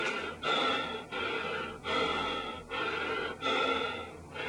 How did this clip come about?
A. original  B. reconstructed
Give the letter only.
A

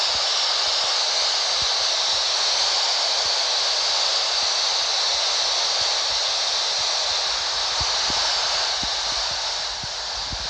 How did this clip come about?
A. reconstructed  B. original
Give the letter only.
B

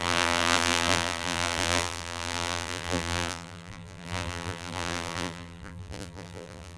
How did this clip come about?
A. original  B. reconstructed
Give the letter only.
B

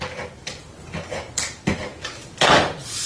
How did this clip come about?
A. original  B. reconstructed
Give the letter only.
A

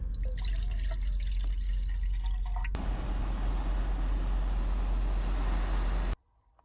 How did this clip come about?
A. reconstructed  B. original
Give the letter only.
B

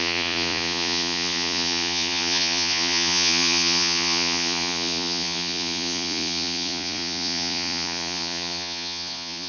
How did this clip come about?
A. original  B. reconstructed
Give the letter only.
B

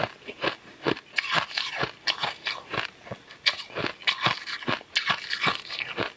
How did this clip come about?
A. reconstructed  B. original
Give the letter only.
B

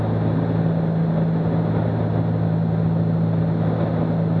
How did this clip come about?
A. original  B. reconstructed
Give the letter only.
A